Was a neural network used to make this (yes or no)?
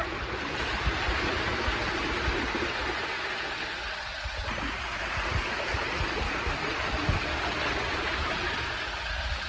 no